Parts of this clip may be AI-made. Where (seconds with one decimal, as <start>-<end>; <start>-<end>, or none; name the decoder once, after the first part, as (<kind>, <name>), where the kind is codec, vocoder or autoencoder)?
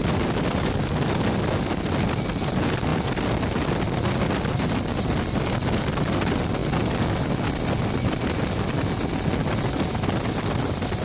none